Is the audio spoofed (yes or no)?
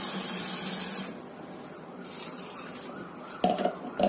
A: no